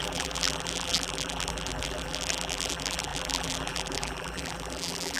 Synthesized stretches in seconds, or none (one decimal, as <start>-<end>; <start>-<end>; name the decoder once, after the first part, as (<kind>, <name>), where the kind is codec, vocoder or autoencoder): 0.0-5.2 (vocoder, BigVGAN v2)